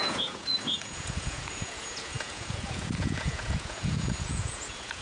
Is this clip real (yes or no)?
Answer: no